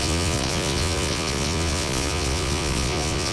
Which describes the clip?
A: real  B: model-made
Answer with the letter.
B